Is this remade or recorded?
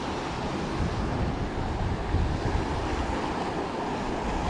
recorded